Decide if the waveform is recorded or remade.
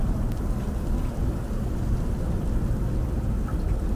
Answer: recorded